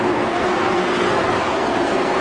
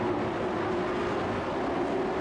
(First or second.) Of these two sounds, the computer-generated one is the first